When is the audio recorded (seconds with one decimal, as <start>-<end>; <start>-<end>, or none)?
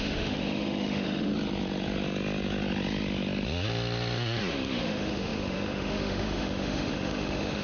1.3-4.5